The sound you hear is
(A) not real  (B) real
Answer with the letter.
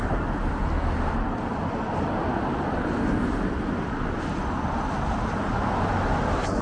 B